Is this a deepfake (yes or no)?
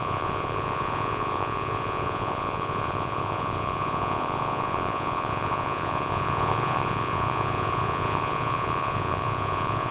yes